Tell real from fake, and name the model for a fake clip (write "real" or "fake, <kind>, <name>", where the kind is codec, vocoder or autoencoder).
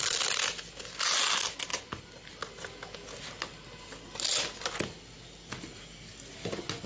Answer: real